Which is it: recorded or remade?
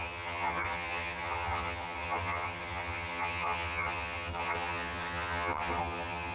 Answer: remade